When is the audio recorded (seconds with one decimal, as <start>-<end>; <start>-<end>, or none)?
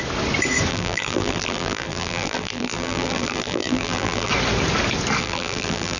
0.0-0.7; 4.3-5.2